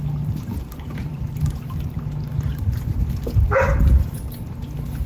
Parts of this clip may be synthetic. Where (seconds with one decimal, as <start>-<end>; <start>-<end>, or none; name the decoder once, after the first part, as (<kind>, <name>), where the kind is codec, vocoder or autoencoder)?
0.5-1.4 (vocoder, BigVGAN v2)